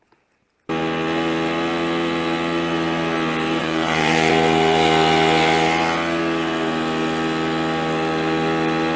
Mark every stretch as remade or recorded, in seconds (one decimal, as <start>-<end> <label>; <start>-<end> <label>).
0.0-3.6 recorded; 3.6-4.3 remade; 4.3-9.0 recorded